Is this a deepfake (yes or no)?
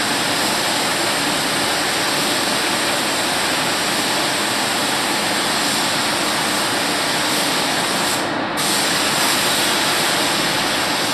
no